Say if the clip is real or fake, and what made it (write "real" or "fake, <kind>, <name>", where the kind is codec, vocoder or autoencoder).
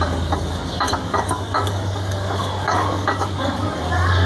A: fake, codec, DAC